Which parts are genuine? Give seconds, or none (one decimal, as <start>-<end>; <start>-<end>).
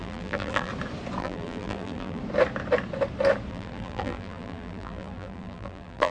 0.7-1.2; 2.2-3.5